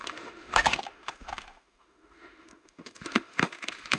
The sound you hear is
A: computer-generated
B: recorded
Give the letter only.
A